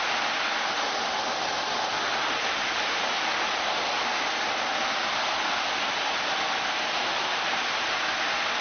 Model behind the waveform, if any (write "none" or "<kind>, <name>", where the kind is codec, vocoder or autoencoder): none